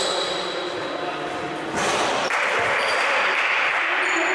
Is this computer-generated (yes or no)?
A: no